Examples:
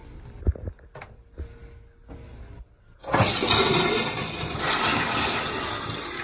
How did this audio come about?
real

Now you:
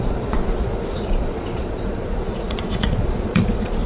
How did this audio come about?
fake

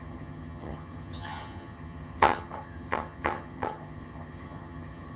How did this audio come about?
fake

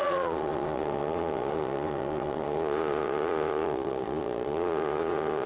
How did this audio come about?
fake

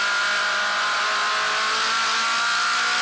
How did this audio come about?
real